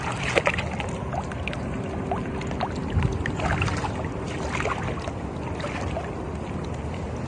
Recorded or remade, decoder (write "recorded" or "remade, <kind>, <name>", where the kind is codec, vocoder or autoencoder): recorded